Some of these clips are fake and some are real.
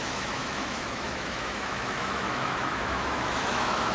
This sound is fake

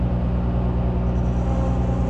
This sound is real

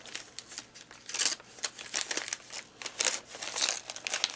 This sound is real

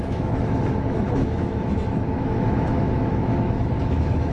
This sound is fake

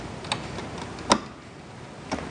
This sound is real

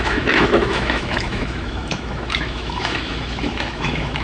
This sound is fake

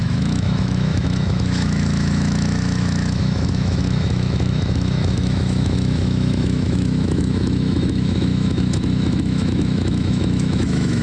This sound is fake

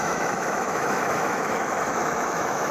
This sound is fake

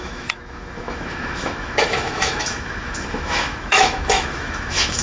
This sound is fake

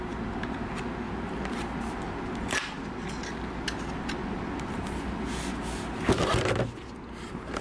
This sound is real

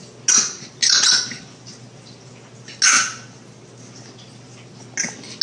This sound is real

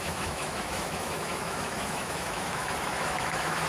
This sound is fake